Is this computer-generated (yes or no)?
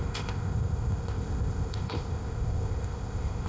yes